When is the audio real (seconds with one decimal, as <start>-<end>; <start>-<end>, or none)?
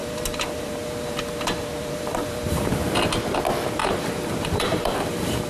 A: 2.7-3.8